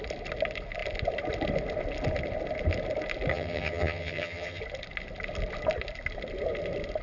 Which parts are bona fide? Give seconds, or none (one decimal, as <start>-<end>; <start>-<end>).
0.0-3.3; 4.6-7.0